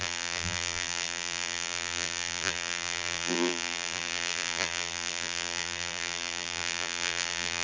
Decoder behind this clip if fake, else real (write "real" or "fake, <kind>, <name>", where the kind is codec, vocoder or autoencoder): fake, vocoder, BigVGAN v2